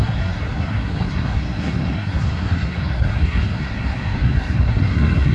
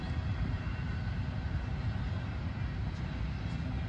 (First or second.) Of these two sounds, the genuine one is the second